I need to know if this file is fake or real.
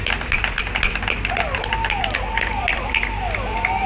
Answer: fake